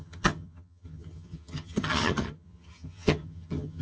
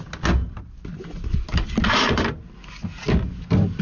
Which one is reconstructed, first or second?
first